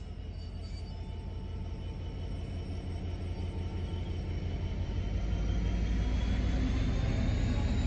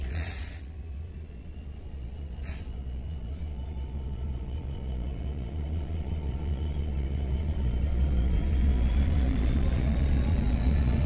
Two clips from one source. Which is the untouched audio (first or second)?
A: first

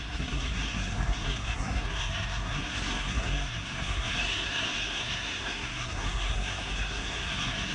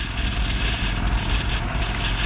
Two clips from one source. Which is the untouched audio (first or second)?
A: second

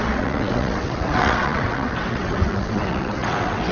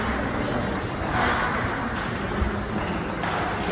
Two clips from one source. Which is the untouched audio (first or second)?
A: second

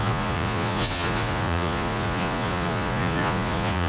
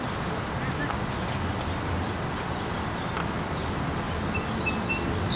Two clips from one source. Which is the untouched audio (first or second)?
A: second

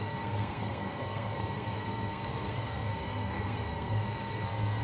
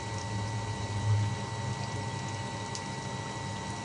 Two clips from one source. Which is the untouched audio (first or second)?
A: second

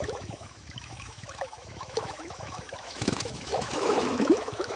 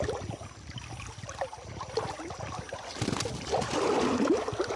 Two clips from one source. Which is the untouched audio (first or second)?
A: second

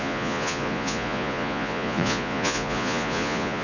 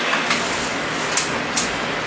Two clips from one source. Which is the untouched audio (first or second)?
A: second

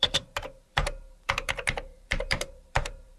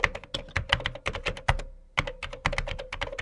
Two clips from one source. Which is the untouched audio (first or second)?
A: second